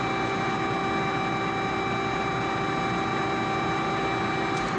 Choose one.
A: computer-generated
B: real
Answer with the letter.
B